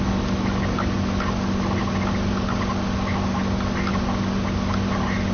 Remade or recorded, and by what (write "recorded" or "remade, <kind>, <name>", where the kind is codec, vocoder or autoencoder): recorded